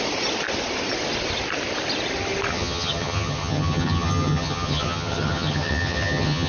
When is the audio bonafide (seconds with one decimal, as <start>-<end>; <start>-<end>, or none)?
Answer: 0.0-2.5